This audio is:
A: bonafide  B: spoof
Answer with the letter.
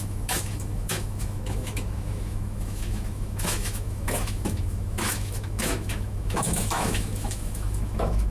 B